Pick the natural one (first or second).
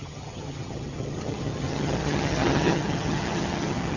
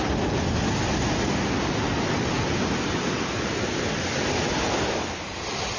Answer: second